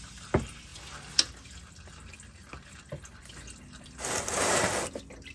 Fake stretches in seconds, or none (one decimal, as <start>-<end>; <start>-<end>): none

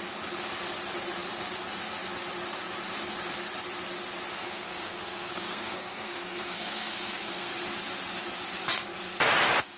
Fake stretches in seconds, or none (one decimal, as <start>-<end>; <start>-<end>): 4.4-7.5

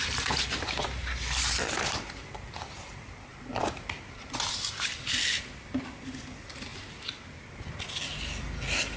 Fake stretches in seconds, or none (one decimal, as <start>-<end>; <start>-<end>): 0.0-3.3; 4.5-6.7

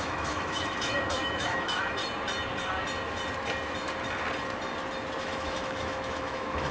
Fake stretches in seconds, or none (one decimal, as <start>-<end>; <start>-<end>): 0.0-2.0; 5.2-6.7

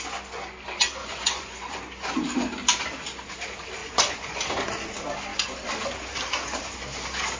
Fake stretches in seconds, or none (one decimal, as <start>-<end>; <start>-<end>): 1.0-1.8; 3.8-4.4